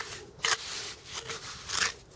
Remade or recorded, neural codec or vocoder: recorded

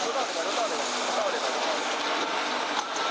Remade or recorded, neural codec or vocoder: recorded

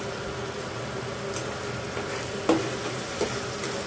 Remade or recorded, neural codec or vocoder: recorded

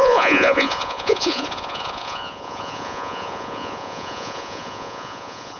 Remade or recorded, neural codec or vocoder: remade, vocoder, Vocos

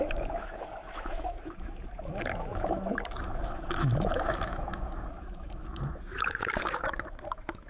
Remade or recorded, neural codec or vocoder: remade, autoencoder, DAC-VAE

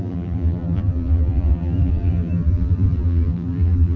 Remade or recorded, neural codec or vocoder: remade, vocoder, BigVGAN v2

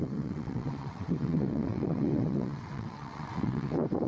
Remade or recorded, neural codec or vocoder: remade, vocoder, WaveNeXt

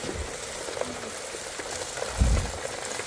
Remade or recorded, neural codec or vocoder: recorded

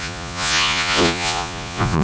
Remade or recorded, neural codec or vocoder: remade, vocoder, Vocos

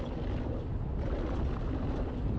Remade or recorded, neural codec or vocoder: recorded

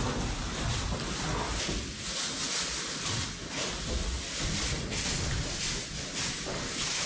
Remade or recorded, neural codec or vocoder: recorded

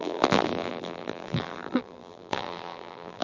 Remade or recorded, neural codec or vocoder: remade, vocoder, BigVGAN v2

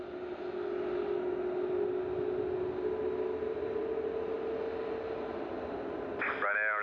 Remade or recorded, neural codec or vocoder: recorded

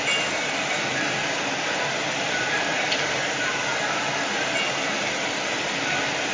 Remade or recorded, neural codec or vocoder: recorded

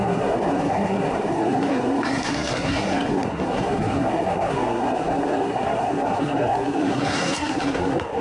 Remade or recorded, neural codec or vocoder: remade, codec, SNAC